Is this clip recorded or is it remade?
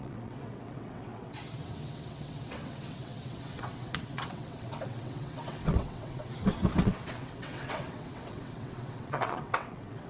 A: remade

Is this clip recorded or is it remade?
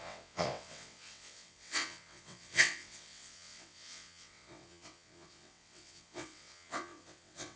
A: remade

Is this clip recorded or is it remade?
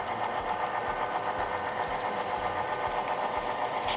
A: recorded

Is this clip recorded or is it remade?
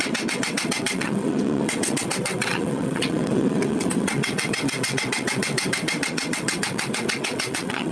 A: remade